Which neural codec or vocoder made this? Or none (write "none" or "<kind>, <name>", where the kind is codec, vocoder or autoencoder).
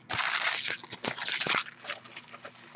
none